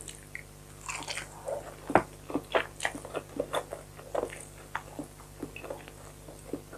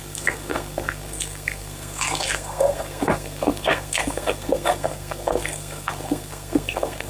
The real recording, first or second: first